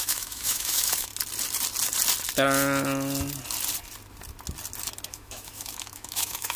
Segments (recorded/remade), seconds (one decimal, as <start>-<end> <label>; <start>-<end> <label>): 0.0-1.1 remade; 1.1-5.1 recorded; 5.1-6.6 remade

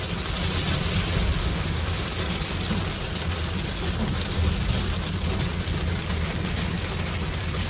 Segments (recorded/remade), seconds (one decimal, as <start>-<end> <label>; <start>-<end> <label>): 0.0-1.4 recorded; 1.4-1.9 remade; 1.9-7.7 recorded

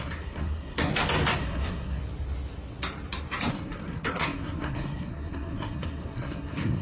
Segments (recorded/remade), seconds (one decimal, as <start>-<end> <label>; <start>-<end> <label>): 0.0-0.9 remade; 0.9-1.4 recorded; 1.4-2.0 remade; 2.0-3.5 recorded; 3.5-6.8 remade

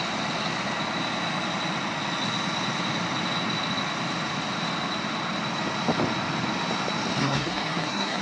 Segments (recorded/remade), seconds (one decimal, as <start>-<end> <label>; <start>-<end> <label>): 0.0-7.2 recorded; 7.2-8.2 remade

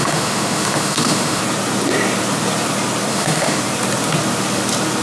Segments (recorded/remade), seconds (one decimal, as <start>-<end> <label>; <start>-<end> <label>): 0.0-1.4 remade; 1.4-3.1 recorded; 3.1-3.6 remade; 3.6-5.0 recorded

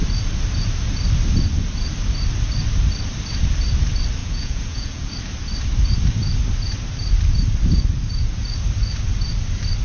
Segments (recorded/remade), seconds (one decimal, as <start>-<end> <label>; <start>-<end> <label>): 0.0-4.2 recorded; 4.2-5.1 remade; 5.1-9.8 recorded